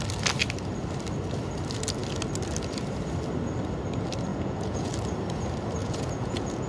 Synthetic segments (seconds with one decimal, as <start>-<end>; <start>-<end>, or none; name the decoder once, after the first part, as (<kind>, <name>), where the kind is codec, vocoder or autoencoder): 4.3-4.9 (vocoder, Vocos); 5.8-6.7